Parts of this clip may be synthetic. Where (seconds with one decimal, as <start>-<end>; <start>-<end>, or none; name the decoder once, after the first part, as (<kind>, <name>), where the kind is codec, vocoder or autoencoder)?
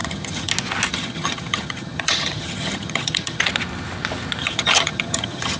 0.0-0.5 (vocoder, HiFi-GAN); 0.9-3.4; 4.4-5.6